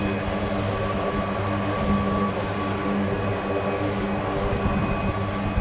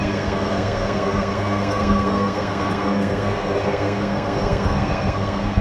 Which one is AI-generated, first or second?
second